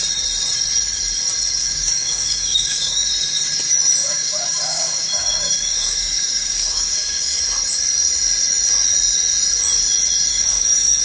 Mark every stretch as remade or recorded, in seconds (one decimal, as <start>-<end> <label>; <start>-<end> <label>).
0.0-1.6 recorded; 1.6-3.1 remade; 3.1-4.0 recorded; 4.0-7.4 remade; 7.4-10.3 recorded; 10.3-11.0 remade